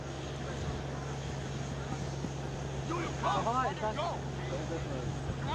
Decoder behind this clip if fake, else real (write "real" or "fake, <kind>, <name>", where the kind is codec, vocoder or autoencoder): real